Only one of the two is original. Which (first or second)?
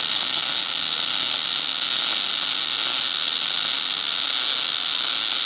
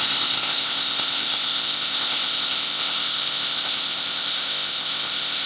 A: first